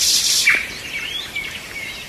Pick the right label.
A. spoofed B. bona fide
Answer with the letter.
A